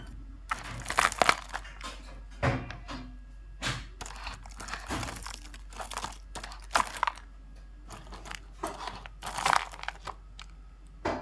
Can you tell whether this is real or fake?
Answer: real